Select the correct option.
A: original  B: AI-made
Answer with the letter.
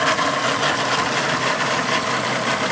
A